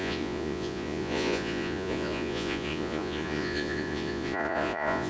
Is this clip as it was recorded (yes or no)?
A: no